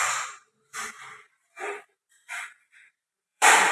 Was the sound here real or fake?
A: fake